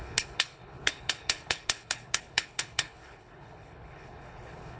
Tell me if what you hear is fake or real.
fake